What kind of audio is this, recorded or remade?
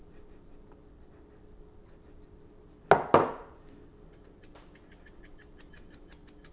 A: recorded